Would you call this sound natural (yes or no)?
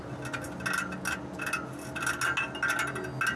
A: yes